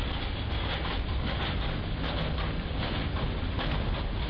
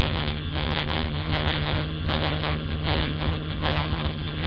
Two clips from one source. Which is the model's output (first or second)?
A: second